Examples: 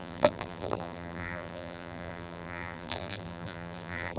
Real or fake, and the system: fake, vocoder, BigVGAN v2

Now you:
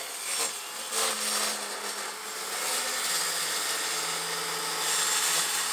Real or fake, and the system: real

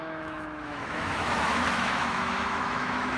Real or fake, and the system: fake, autoencoder, DAC-VAE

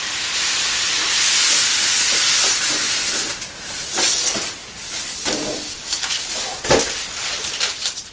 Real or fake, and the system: real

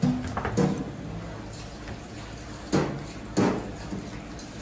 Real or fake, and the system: real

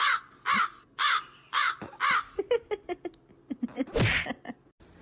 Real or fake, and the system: real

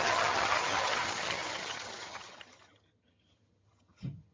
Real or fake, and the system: fake, vocoder, HiFi-GAN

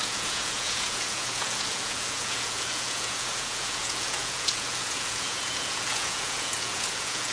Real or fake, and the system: fake, vocoder, Vocos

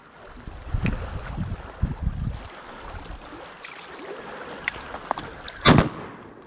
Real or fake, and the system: real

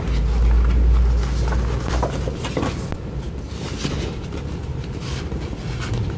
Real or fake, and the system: real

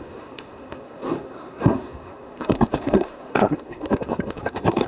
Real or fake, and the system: fake, codec, SNAC